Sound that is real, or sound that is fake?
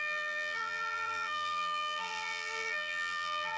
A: fake